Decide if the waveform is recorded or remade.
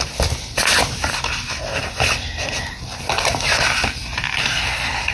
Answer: recorded